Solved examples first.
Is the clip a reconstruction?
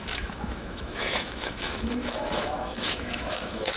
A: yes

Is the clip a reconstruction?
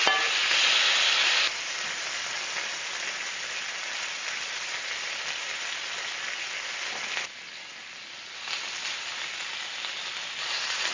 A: no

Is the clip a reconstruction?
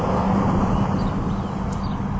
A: no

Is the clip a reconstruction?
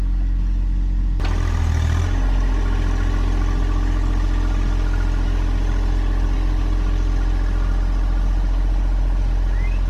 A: no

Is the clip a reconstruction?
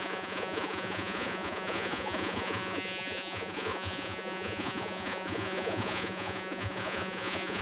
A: yes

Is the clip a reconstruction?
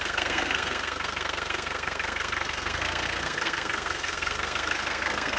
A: yes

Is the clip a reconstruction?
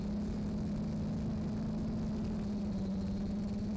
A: no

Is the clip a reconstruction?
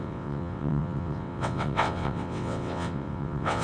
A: yes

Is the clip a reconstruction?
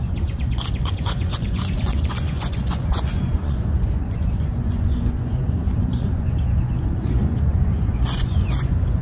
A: yes